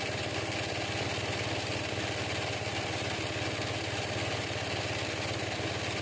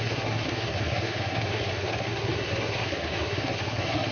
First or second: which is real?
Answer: first